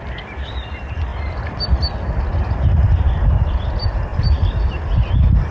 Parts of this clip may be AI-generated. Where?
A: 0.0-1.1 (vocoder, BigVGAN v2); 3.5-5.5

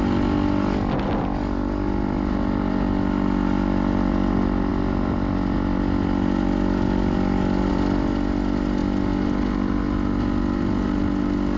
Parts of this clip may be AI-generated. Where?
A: none

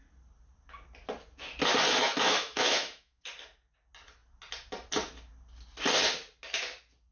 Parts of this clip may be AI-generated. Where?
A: 2.0-3.2 (autoencoder, DAC-VAE)